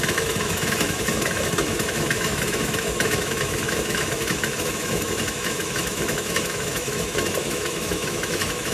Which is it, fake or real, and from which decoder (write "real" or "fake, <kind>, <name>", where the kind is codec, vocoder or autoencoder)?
fake, autoencoder, DAC-VAE